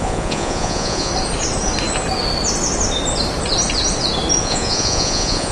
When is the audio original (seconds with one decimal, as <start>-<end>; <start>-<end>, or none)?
1.1-4.4